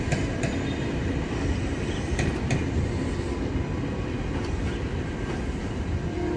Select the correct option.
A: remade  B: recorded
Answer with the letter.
B